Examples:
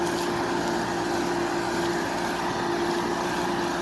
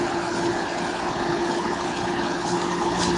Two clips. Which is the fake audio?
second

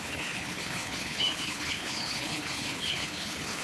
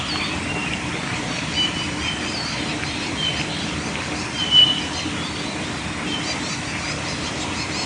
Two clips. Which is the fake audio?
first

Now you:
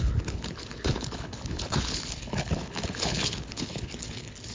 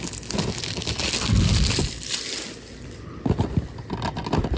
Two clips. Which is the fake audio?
first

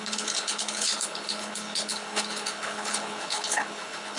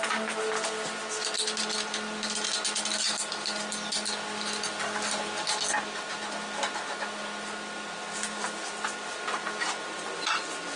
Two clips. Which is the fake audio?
first